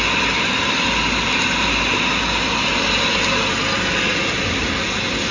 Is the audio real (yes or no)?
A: yes